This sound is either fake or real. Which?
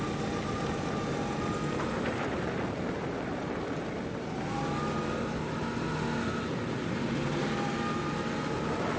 real